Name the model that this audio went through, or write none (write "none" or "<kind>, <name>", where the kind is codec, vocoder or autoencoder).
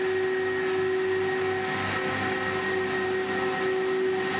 none